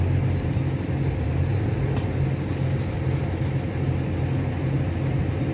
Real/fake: real